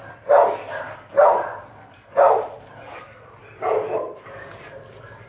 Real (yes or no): yes